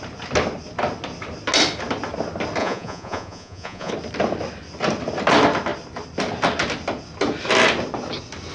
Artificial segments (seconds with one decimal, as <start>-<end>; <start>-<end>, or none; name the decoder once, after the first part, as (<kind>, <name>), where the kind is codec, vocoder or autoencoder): 2.6-3.9 (vocoder, Vocos)

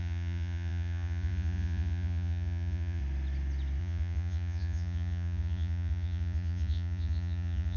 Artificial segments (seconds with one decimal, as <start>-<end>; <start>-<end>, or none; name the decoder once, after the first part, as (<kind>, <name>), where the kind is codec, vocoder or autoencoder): 0.0-3.0 (vocoder, Vocos); 3.8-7.8

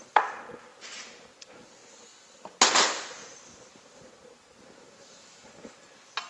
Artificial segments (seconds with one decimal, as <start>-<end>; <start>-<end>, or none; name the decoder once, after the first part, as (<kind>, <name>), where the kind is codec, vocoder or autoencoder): none

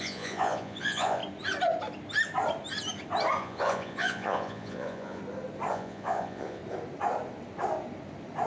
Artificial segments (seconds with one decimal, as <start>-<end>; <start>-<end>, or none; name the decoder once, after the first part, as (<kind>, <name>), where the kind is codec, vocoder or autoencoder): 0.0-1.2 (vocoder, Vocos); 3.4-5.2; 5.7-6.6

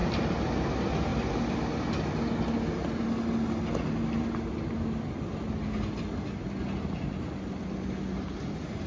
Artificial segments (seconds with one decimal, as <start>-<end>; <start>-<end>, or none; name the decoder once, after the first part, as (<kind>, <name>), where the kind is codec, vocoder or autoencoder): none

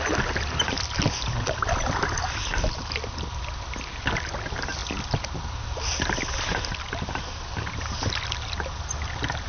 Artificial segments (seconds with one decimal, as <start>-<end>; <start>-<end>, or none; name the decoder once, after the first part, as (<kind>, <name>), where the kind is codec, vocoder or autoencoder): none

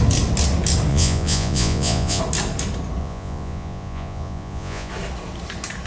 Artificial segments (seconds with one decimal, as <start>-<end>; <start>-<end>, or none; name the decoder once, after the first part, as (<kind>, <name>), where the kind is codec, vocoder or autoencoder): 0.9-2.2 (vocoder, Vocos); 3.0-4.9